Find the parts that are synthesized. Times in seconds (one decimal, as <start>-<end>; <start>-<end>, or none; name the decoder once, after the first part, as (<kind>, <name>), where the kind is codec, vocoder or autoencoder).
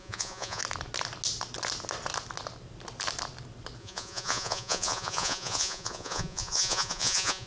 0.0-0.6 (vocoder, Vocos); 3.8-7.5